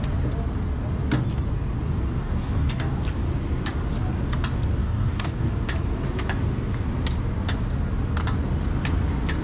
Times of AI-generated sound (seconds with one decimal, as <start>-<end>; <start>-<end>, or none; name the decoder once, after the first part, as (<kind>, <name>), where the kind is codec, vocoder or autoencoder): 2.2-2.9 (codec, DAC); 4.8-5.5